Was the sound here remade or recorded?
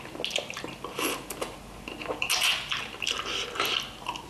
recorded